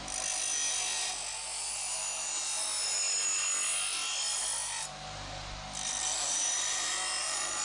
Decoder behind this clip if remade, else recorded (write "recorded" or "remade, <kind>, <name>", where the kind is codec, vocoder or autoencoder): recorded